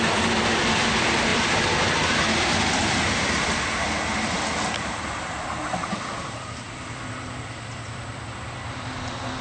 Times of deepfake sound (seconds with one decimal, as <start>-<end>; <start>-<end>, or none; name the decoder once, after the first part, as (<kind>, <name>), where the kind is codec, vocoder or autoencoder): none